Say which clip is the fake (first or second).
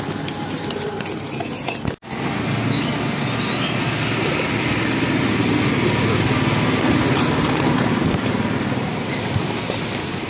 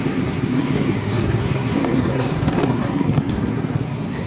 second